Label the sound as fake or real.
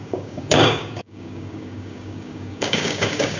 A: fake